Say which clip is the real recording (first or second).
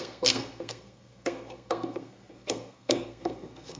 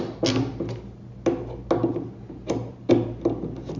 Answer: second